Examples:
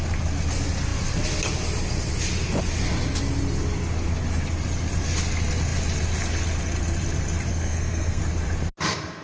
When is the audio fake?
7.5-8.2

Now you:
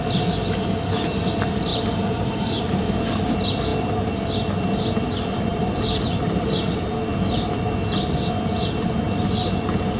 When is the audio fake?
1.7-2.6; 5.5-6.6

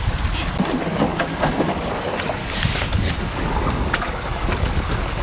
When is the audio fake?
0.9-1.9; 2.4-5.2

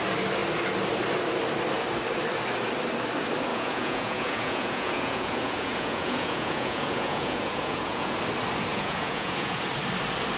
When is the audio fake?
3.5-8.2; 8.7-9.6